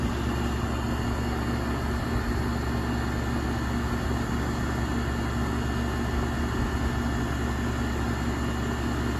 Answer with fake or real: real